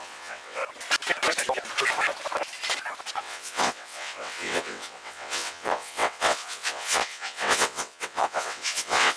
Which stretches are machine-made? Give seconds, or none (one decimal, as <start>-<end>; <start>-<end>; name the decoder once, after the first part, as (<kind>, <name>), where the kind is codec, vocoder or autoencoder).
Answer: 0.0-0.6 (vocoder, WaveNeXt); 3.2-9.2